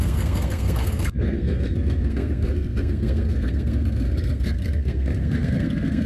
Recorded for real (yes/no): no